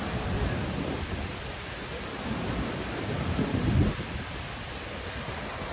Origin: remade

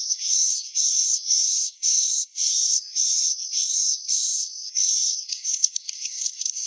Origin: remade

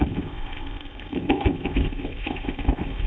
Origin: remade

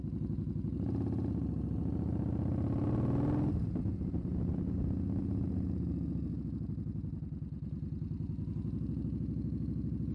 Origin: recorded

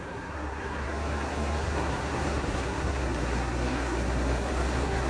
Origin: remade